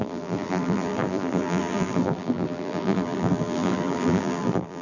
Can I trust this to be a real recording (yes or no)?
no